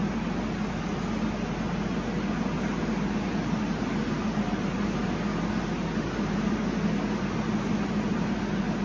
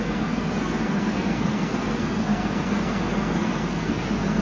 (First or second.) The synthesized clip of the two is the second